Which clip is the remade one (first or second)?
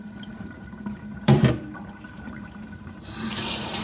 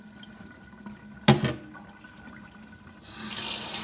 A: first